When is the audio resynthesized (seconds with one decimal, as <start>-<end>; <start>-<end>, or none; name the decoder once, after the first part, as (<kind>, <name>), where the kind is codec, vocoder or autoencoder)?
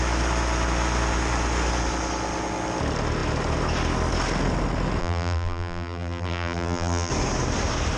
5.0-7.1 (vocoder, BigVGAN v2)